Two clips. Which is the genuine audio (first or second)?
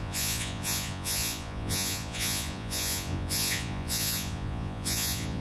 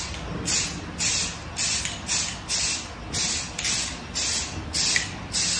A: second